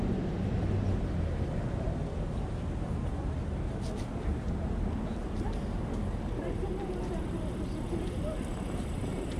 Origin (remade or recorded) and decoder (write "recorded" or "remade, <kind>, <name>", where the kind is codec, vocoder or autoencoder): recorded